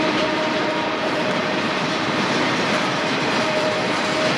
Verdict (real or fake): fake